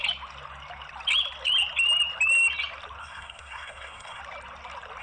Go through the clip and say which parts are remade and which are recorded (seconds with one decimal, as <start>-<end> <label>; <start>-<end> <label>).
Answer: 0.0-3.0 recorded; 3.0-4.2 remade; 4.2-5.0 recorded